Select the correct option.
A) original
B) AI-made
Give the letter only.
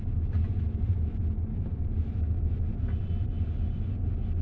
A